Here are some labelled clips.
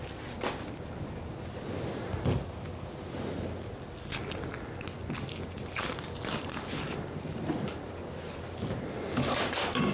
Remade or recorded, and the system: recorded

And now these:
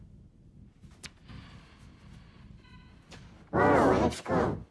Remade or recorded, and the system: recorded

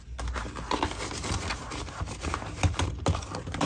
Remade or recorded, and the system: recorded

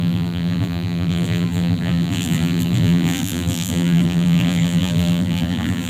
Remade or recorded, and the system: remade, vocoder, BigVGAN v2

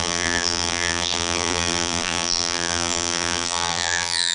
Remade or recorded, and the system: remade, vocoder, BigVGAN v2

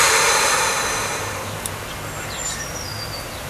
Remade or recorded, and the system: recorded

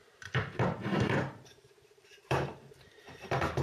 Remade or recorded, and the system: remade, vocoder, BigVGAN v2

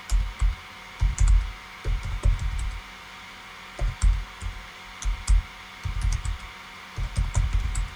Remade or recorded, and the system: remade, vocoder, BigVGAN v2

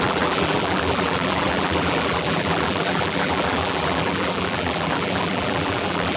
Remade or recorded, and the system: remade, vocoder, BigVGAN v2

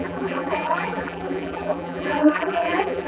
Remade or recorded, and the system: remade, vocoder, BigVGAN v2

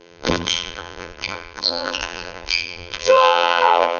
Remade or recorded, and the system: remade, vocoder, BigVGAN v2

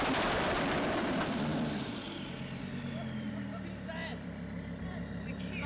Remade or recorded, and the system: remade, vocoder, BigVGAN v2